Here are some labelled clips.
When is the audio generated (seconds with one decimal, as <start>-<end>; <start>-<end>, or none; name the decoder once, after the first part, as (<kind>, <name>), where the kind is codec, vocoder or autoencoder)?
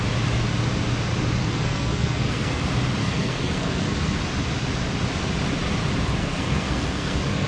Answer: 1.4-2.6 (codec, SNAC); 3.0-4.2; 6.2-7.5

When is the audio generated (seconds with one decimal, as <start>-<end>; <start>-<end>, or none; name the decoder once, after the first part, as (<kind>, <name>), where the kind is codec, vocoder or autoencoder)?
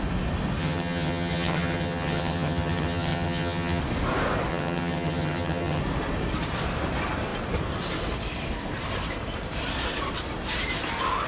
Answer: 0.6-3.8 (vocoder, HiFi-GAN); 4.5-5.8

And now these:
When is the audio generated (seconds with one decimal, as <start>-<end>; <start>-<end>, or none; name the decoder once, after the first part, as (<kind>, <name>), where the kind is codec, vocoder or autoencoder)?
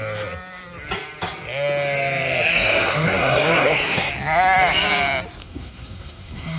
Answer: 2.5-4.1 (codec, SNAC); 5.4-6.6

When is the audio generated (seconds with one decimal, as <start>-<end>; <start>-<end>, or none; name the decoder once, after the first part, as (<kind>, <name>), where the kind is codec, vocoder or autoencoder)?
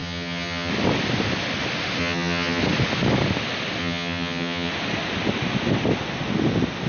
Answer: 0.0-0.7 (vocoder, HiFi-GAN); 2.0-2.6; 3.8-4.7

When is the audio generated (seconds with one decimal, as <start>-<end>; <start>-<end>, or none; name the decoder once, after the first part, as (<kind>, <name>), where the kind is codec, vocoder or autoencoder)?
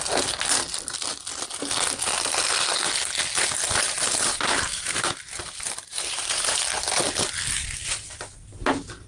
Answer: 3.8-7.0 (vocoder, BigVGAN v2)